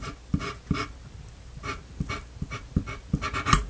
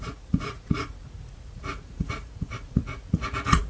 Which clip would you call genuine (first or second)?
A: first